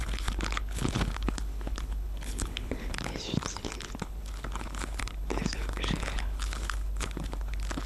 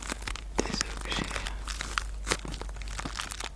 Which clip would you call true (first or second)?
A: second